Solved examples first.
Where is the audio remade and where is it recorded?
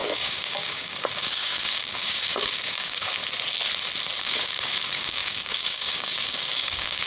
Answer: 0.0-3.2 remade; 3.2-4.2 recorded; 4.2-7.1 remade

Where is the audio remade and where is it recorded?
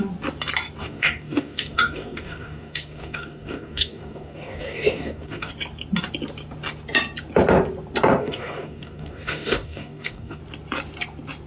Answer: 0.0-0.8 recorded; 0.8-5.5 remade; 5.5-8.2 recorded; 8.2-10.4 remade; 10.4-11.5 recorded